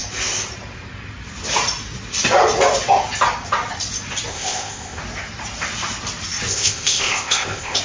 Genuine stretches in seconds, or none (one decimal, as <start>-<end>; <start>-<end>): 0.0-4.3; 5.0-6.5